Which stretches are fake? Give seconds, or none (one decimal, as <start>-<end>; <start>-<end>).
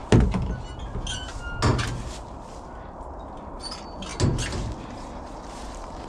none